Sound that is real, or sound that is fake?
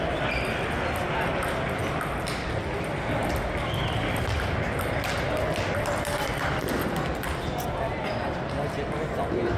real